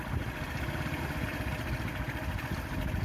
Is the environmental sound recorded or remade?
recorded